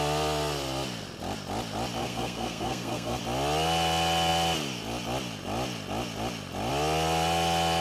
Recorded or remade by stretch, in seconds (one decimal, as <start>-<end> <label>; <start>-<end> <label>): 0.0-2.0 recorded; 2.0-3.2 remade; 3.2-7.8 recorded